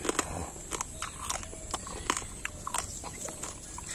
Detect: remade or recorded recorded